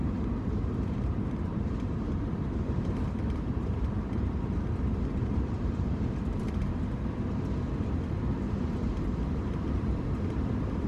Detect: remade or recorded remade